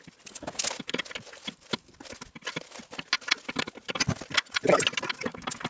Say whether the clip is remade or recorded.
recorded